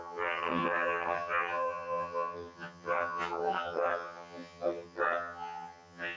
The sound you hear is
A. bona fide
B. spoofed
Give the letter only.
B